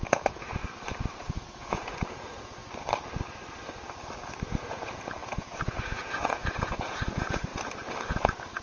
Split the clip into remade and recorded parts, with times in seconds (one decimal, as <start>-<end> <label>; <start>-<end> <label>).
0.0-0.6 remade; 0.6-1.2 recorded; 1.2-2.6 remade; 2.6-4.4 recorded; 4.4-7.5 remade; 7.5-8.0 recorded; 8.0-8.6 remade